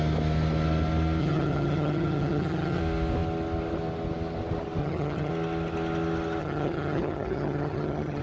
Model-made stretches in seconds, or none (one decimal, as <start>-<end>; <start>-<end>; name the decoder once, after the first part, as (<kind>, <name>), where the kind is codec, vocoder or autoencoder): 1.2-2.8 (vocoder, HiFi-GAN); 4.8-5.3; 6.4-8.2